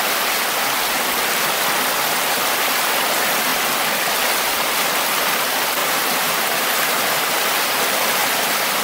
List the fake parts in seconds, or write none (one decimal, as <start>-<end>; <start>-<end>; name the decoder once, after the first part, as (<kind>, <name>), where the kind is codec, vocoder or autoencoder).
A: 5.8-7.2 (vocoder, BigVGAN v2); 8.2-8.8